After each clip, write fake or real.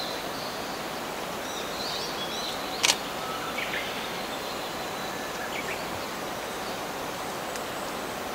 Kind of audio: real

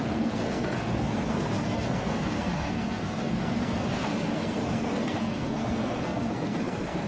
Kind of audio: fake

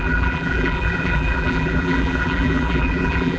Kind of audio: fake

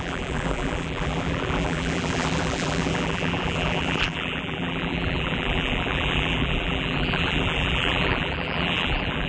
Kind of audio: fake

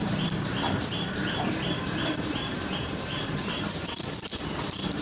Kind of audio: fake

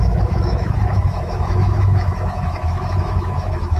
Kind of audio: fake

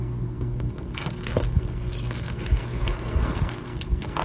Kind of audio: fake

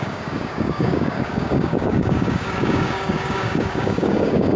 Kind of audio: fake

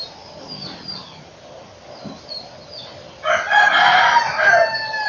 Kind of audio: real